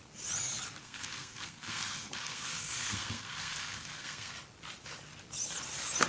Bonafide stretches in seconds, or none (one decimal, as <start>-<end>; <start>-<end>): 0.0-0.8; 4.3-6.1